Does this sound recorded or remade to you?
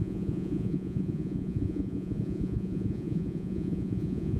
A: remade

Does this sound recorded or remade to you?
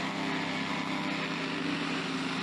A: recorded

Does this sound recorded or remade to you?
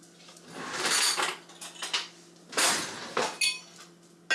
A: recorded